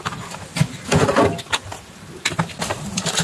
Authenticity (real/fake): fake